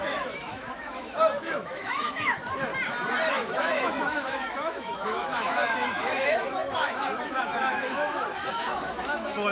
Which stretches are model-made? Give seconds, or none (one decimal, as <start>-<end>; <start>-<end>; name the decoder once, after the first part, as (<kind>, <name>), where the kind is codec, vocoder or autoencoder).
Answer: 0.0-2.7 (autoencoder, DAC-VAE); 3.3-9.5